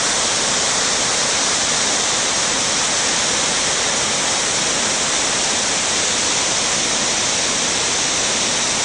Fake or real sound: real